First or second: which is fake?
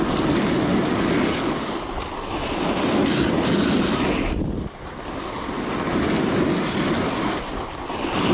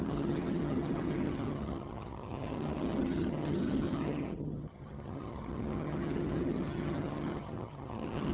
second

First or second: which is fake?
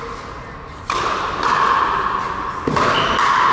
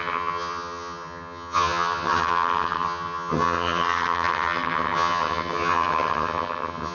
second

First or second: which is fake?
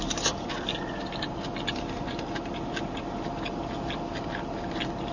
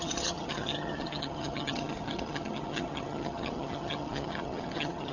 second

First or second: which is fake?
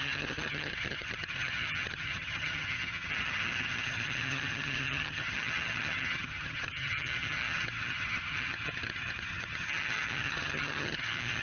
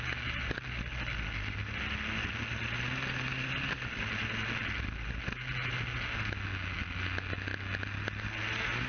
first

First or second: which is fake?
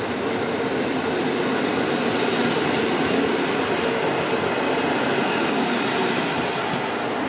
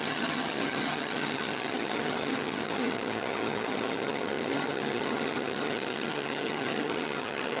second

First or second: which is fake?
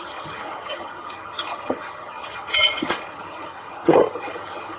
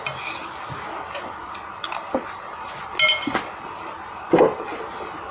first